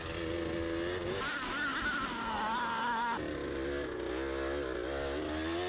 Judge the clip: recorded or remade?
recorded